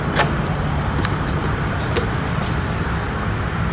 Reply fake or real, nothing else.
real